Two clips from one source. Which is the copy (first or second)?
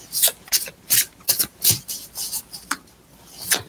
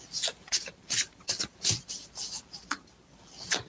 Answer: second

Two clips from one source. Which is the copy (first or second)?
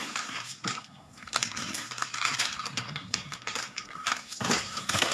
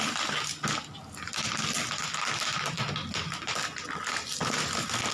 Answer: first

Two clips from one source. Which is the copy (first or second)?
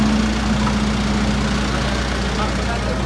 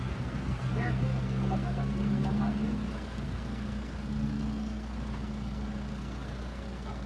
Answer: second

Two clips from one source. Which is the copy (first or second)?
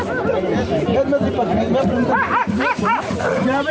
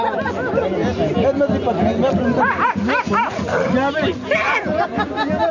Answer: first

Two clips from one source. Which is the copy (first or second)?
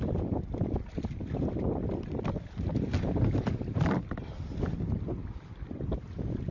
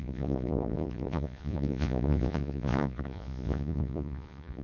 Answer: second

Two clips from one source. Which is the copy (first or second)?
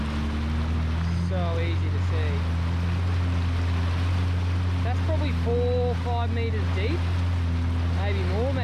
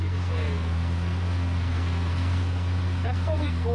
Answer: second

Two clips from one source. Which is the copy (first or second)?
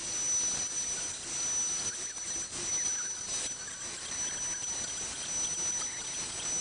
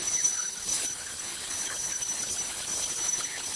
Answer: second